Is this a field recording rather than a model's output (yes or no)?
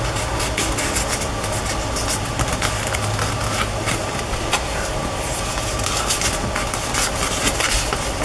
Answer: yes